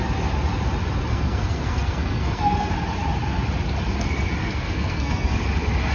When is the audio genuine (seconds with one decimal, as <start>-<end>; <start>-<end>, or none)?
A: 0.0-1.1; 2.7-4.4; 5.4-5.9